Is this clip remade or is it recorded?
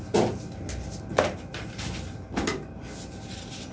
recorded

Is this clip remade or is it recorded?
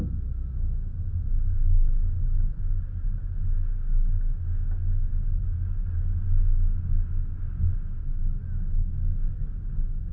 recorded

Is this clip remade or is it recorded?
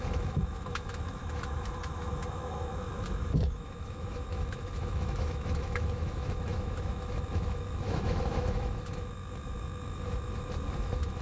remade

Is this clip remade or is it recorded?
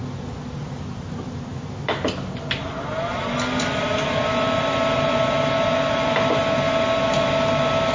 recorded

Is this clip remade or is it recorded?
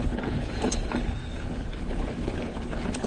remade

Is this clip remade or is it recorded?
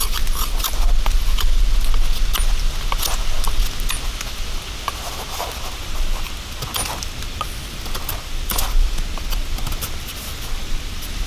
recorded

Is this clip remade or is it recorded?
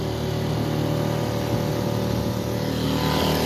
recorded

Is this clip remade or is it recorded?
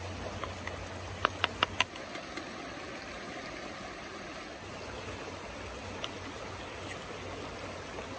recorded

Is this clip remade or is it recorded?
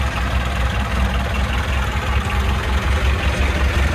recorded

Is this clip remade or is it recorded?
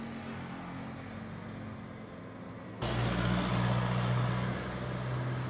recorded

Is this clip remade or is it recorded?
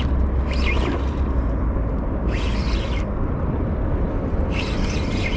recorded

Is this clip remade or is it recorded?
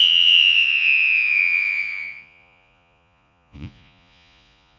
remade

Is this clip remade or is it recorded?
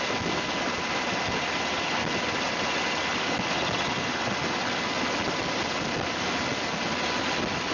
recorded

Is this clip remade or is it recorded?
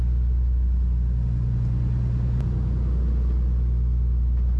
recorded